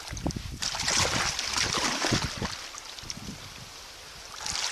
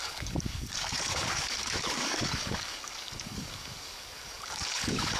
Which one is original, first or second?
first